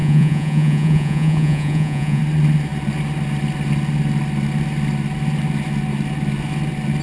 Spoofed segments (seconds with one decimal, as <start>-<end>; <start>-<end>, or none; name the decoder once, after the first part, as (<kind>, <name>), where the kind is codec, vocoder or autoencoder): 0.0-2.2 (vocoder, Vocos)